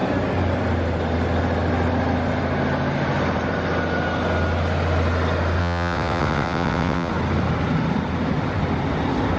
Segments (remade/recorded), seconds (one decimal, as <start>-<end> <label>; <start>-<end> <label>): 0.0-5.6 recorded; 5.6-7.1 remade; 7.1-9.4 recorded